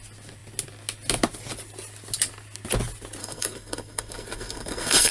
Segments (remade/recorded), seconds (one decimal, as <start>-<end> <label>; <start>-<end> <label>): 0.0-3.2 recorded; 3.2-5.1 remade